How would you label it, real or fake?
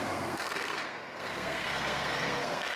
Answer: fake